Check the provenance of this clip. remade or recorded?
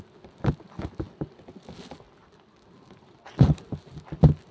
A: recorded